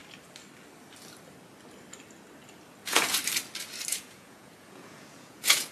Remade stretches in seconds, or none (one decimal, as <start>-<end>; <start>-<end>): 2.8-3.2; 3.9-5.7